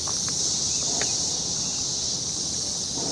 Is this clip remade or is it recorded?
recorded